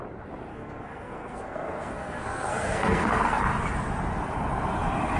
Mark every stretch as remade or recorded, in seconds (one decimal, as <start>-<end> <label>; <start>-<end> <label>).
0.0-0.5 recorded; 0.5-3.4 remade; 3.4-5.2 recorded